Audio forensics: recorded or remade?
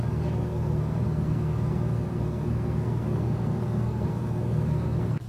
remade